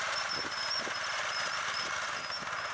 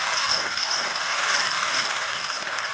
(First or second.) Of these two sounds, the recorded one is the first